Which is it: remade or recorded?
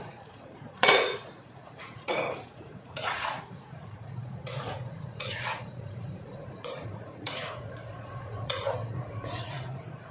remade